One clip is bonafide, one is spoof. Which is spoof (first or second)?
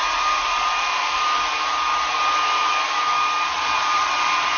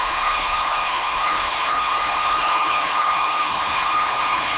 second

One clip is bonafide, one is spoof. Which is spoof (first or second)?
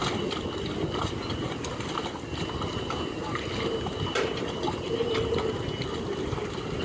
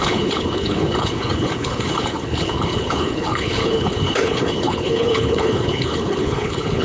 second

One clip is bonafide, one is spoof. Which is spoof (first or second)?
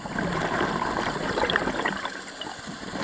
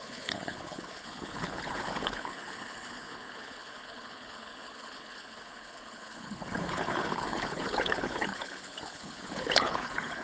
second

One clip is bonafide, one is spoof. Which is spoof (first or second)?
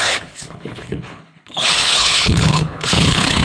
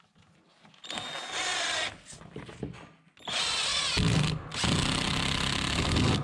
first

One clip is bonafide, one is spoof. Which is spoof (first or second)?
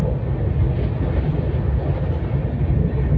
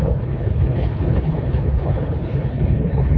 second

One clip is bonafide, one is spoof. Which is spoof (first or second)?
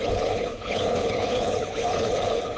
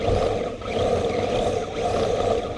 first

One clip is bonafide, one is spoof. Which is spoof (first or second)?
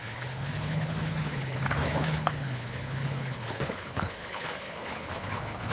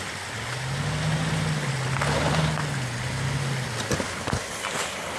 first